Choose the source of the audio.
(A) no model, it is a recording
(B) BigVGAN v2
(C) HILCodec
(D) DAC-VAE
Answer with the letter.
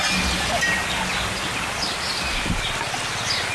A